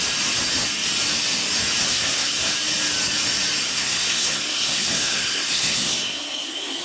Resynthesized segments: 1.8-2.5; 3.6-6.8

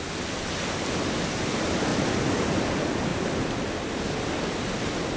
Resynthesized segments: none

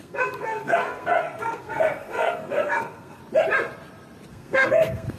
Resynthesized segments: 0.0-3.2; 4.3-5.2

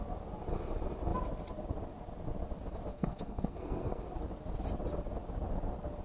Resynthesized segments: 2.9-4.0